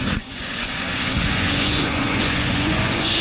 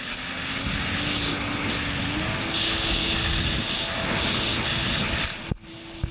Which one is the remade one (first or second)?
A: first